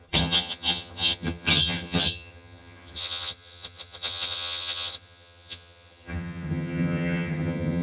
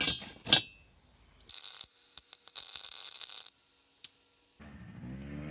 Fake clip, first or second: first